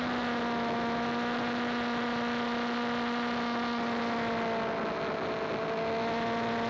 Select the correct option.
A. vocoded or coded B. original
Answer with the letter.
B